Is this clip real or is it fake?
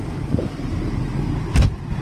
real